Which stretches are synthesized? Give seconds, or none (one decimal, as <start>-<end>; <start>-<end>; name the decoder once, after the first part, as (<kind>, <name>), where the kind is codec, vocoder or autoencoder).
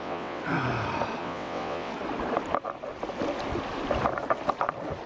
0.0-0.4 (vocoder, WaveNeXt); 1.2-1.9